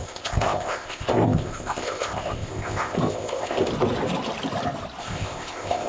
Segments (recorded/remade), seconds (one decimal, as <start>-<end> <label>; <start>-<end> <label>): 0.0-3.7 remade; 3.7-5.0 recorded; 5.0-5.9 remade

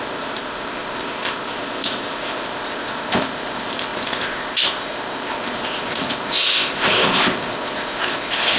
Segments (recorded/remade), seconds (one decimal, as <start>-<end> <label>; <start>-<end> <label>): 0.0-8.6 remade